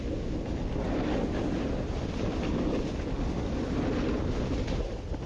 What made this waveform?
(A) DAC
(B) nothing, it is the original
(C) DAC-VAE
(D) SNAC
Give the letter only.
B